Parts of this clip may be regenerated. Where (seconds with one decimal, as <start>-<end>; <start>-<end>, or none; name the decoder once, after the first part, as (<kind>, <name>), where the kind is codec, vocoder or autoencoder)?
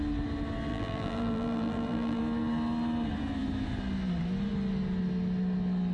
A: 0.7-2.2 (vocoder, BigVGAN v2)